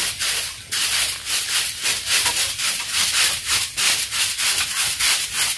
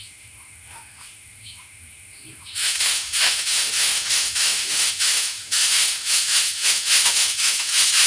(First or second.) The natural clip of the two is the first